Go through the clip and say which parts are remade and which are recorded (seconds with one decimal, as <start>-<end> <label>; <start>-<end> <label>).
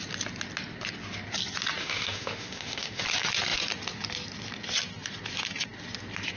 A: 0.0-1.8 recorded; 1.8-3.0 remade; 3.0-6.4 recorded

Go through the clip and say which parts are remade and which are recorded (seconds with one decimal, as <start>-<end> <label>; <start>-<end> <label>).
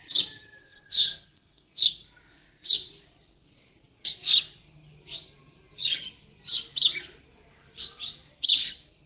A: 0.0-0.6 recorded; 0.6-1.9 remade; 1.9-9.1 recorded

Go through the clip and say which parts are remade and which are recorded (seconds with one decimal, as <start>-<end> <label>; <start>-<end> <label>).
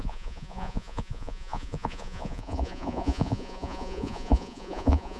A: 0.0-5.2 remade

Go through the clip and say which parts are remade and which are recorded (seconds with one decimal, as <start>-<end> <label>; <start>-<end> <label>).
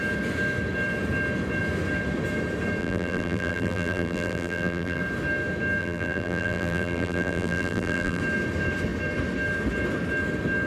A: 0.0-2.8 recorded; 2.8-5.0 remade; 5.0-5.8 recorded; 5.8-8.2 remade; 8.2-10.7 recorded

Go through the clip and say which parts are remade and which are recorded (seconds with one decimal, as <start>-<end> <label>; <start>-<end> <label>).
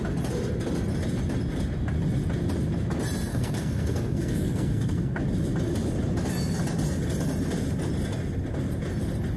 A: 0.0-3.3 recorded; 3.3-5.2 remade; 5.2-9.4 recorded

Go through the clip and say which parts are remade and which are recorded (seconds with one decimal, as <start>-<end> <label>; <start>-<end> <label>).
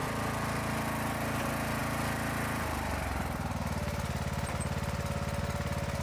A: 0.0-1.4 remade; 1.4-1.8 recorded; 1.8-5.4 remade; 5.4-6.0 recorded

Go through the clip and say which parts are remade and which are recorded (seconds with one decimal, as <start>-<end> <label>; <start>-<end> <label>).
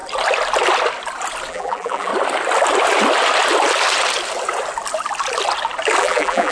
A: 0.0-1.5 recorded; 1.5-2.1 remade; 2.1-6.0 recorded; 6.0-6.5 remade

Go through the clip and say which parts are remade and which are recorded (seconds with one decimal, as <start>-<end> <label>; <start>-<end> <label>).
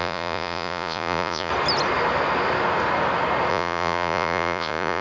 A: 0.0-1.5 remade; 1.5-3.5 recorded; 3.5-5.0 remade